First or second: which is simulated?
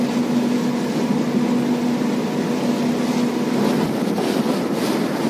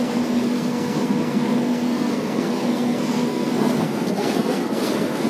second